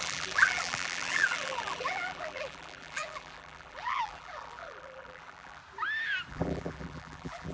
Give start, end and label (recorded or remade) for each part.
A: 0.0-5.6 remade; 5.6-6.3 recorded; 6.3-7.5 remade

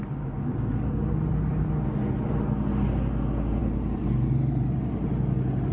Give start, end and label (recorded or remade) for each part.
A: 0.0-3.6 recorded; 3.6-5.1 remade; 5.1-5.7 recorded

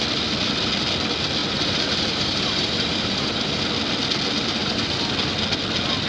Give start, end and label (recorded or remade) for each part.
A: 0.0-1.4 recorded; 1.4-3.6 remade; 3.6-4.6 recorded; 4.6-5.1 remade; 5.1-6.1 recorded

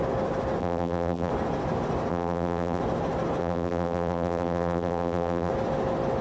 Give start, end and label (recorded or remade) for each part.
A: 0.0-0.6 recorded; 0.6-1.3 remade; 1.3-2.1 recorded; 2.1-2.8 remade; 2.8-3.4 recorded; 3.4-5.5 remade; 5.5-6.2 recorded

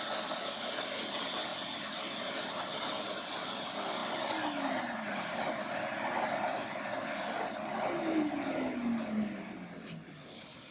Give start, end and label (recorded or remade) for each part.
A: 0.0-10.7 recorded

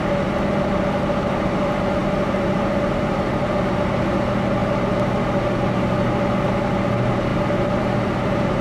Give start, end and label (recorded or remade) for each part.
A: 0.0-8.6 recorded